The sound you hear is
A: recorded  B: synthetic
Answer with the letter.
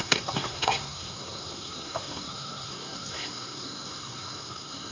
B